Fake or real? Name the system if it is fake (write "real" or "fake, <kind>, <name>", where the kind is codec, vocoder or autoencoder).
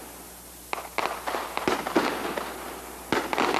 real